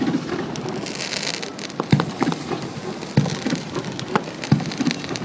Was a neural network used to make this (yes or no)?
no